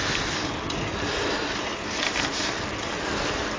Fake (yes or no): no